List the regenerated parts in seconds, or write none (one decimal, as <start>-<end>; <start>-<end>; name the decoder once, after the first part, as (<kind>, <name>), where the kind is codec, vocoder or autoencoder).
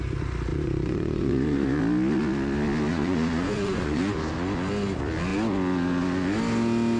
0.5-1.8 (vocoder, Vocos); 2.9-4.0